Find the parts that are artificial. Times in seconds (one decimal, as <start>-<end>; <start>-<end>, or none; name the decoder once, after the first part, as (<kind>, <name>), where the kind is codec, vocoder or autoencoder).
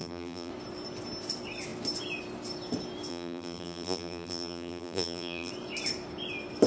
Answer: 0.0-0.5 (vocoder, BigVGAN v2); 3.1-5.5